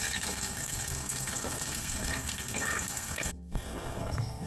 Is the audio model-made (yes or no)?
yes